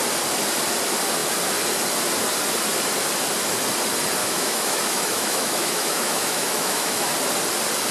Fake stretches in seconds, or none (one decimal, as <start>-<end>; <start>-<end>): 4.2-7.1